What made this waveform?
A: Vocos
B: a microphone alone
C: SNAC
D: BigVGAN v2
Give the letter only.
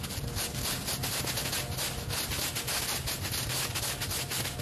B